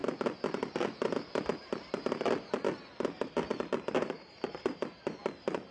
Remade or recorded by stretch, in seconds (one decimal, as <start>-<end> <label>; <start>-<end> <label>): 0.0-3.5 recorded; 3.5-5.7 remade